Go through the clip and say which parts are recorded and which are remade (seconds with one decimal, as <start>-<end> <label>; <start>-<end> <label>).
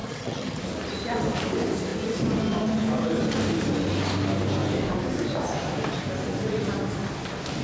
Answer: 0.0-0.6 remade; 0.6-7.6 recorded